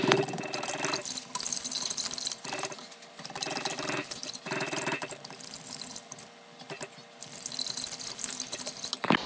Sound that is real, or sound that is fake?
real